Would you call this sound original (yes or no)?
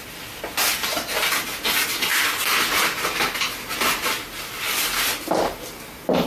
yes